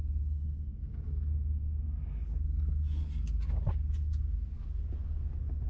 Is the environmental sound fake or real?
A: real